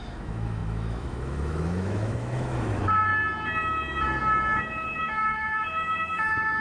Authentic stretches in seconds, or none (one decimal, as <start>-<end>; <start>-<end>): 3.1-4.6